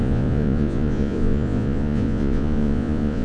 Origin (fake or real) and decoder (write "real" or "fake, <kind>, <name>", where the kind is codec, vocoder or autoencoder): fake, vocoder, Vocos